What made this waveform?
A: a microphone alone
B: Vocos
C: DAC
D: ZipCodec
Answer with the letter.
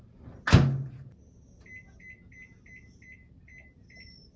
A